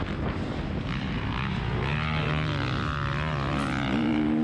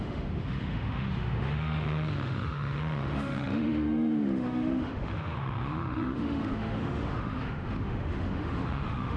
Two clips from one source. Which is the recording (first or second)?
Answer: first